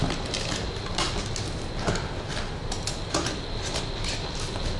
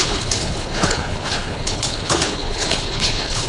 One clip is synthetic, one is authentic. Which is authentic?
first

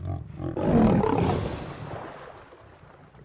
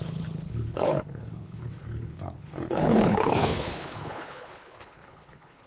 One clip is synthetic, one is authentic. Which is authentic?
first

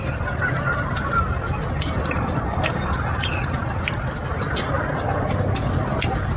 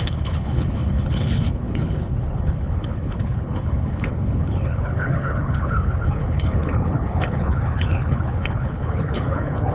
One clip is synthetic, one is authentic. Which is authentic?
first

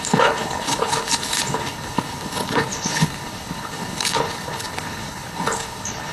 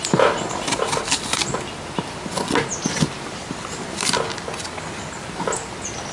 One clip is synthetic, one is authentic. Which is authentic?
second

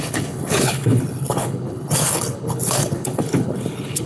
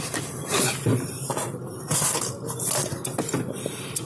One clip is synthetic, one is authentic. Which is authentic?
second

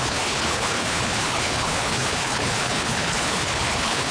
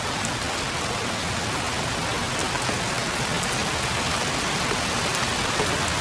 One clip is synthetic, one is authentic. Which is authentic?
second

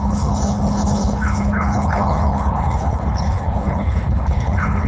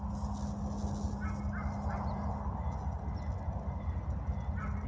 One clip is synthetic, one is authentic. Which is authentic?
second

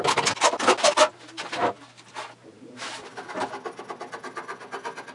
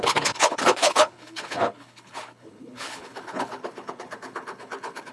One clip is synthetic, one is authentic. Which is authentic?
first